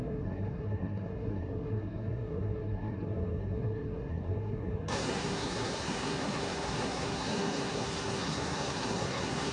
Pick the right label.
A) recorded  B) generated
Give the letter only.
B